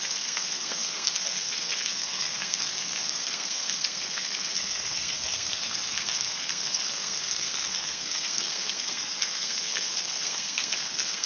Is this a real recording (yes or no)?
no